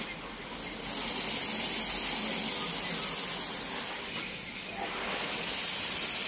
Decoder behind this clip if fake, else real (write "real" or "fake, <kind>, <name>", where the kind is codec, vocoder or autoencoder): real